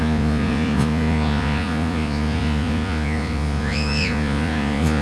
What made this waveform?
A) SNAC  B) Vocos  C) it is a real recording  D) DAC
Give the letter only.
B